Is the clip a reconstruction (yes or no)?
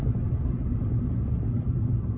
no